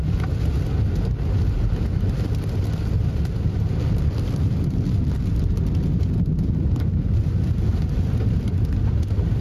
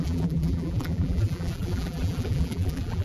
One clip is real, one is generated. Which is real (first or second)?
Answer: first